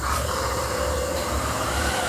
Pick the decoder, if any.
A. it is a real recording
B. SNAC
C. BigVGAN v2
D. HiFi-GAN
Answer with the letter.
A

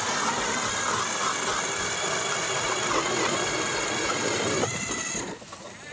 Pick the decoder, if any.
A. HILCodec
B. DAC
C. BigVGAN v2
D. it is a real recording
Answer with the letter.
D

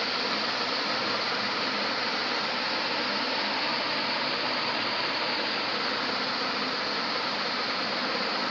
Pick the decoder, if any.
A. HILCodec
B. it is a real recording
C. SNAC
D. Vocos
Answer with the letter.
B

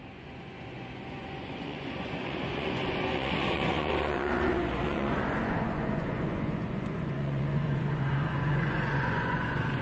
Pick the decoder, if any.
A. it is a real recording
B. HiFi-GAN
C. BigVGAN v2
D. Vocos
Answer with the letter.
D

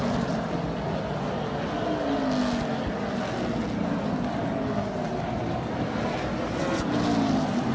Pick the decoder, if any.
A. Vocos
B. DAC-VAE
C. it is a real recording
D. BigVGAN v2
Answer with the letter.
C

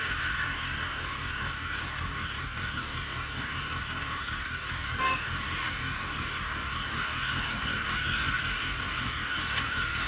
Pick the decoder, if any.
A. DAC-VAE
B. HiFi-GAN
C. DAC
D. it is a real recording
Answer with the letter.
C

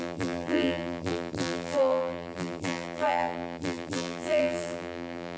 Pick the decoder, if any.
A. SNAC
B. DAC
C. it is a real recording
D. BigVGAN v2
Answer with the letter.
D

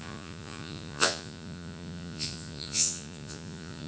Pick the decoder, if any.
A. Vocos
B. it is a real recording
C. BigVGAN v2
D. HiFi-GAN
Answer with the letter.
A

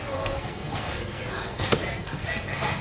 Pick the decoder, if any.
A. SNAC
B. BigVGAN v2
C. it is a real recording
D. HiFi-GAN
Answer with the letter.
A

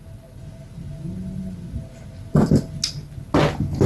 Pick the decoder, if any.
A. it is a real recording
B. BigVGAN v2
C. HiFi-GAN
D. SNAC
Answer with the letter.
A